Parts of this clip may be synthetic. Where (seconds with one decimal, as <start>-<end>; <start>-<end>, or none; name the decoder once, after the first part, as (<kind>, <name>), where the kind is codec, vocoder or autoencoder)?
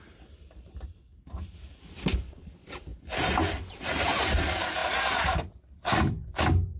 none